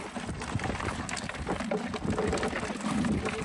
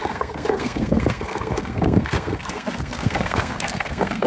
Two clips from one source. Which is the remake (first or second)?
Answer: second